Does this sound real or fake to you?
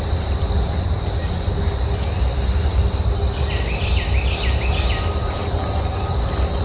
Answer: real